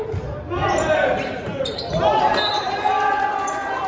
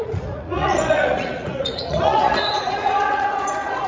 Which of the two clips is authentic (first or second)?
first